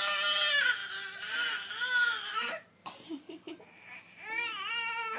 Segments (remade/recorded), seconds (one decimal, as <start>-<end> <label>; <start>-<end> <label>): 0.0-0.8 recorded; 0.8-1.7 remade; 1.7-2.3 recorded; 2.3-4.7 remade; 4.7-5.2 recorded